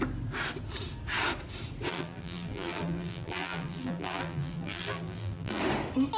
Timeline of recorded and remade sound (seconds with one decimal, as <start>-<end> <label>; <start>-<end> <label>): 0.0-1.9 recorded; 1.9-5.6 remade; 5.6-6.2 recorded